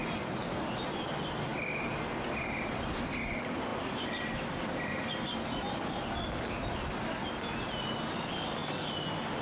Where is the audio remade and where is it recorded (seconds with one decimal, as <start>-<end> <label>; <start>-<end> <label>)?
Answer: 0.0-9.4 recorded